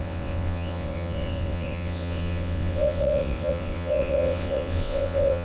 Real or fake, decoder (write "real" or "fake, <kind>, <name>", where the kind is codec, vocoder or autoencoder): fake, vocoder, WaveNeXt